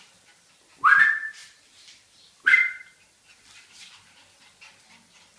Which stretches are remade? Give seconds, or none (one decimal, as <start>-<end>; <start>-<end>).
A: none